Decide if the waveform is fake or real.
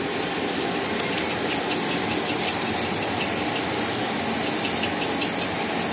real